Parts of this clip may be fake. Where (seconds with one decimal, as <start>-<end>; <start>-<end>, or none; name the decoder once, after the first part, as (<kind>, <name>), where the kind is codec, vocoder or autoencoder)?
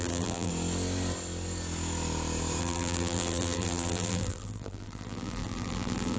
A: 0.0-0.5 (vocoder, BigVGAN v2); 2.6-6.2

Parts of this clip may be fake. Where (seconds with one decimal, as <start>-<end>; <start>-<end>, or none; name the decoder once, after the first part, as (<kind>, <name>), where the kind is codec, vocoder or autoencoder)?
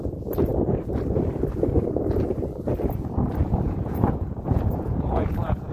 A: 3.4-5.7 (vocoder, Vocos)